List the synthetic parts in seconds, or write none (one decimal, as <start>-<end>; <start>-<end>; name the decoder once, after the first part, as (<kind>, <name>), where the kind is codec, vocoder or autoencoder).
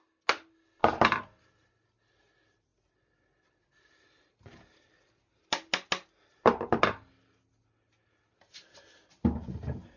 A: none